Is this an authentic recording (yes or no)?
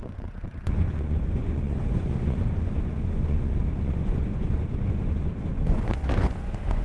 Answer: no